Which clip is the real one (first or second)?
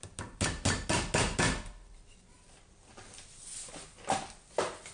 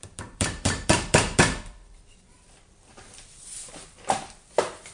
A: first